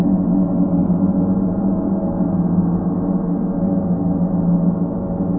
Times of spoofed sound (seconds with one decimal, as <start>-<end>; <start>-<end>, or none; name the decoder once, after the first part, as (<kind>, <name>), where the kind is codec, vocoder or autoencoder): none